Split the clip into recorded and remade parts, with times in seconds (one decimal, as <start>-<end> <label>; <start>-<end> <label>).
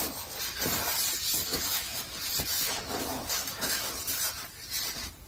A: 0.0-1.5 recorded; 1.5-2.0 remade; 2.0-2.5 recorded; 2.5-3.9 remade; 3.9-5.3 recorded